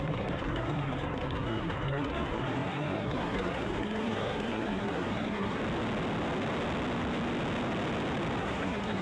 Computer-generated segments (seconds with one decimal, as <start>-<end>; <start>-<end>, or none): 0.0-5.6; 8.4-9.0